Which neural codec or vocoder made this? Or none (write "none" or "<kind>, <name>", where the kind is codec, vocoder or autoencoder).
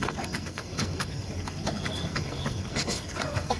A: codec, SNAC